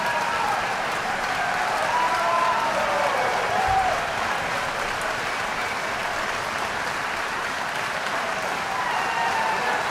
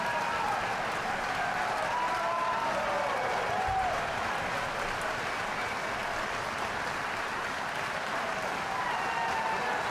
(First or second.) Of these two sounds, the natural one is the second